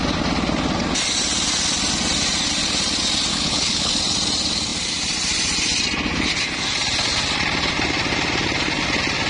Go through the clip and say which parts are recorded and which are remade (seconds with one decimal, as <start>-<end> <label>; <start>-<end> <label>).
0.0-3.3 recorded; 3.3-3.9 remade; 3.9-9.3 recorded